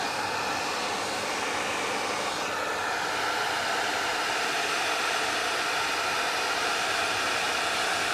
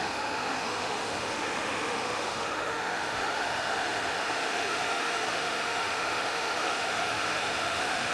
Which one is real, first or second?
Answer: first